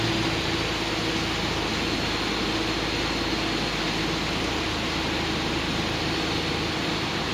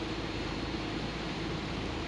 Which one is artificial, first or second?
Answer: second